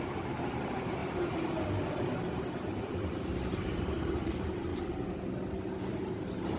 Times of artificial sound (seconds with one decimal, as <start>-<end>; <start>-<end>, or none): 0.0-1.0; 2.9-4.7; 6.1-6.6